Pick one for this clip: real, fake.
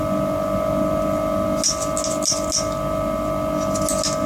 real